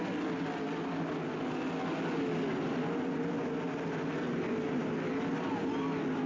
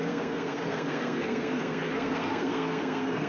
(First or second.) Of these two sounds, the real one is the first